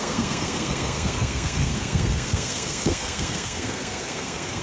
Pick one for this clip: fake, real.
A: fake